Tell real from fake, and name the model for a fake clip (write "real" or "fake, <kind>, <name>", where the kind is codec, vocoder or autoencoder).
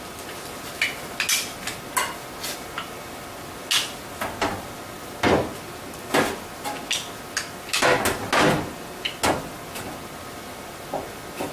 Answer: real